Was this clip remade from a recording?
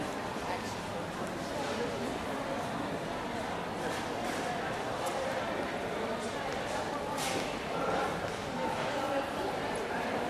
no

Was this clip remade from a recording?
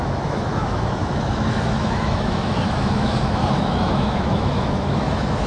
yes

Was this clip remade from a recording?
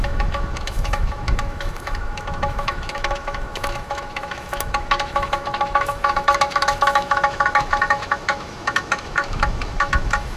yes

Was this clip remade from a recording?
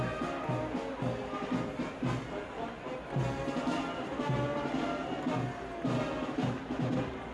no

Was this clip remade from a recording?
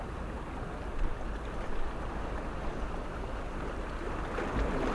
no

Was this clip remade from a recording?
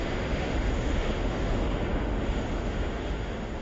yes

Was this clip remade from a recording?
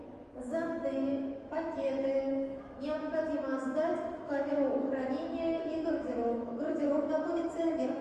yes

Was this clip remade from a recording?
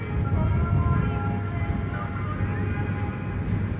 no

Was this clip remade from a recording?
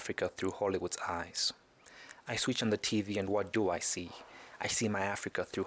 no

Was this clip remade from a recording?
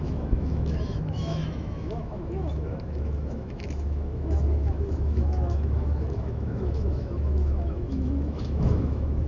yes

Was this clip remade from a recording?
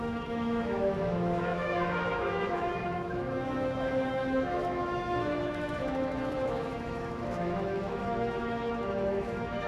yes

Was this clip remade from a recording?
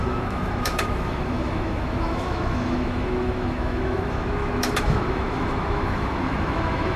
yes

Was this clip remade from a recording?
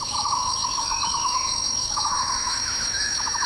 yes